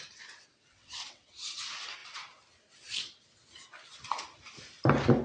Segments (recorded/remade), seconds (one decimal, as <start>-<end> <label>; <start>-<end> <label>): 0.0-0.7 recorded; 0.7-1.6 remade; 1.6-5.2 recorded